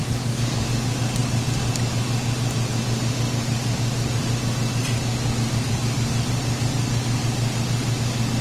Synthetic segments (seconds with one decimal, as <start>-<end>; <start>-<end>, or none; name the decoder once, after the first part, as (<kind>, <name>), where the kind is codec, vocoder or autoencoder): 0.0-0.6 (codec, DAC)